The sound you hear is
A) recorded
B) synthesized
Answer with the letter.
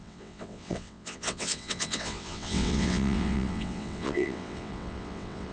B